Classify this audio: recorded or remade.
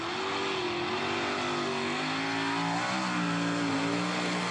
recorded